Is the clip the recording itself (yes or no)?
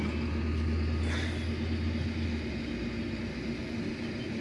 yes